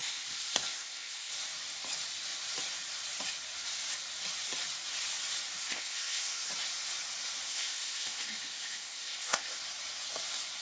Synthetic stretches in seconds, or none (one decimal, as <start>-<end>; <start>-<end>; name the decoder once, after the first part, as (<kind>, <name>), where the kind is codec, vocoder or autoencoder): 0.0-1.3 (codec, ZipCodec); 5.6-6.5; 7.5-9.6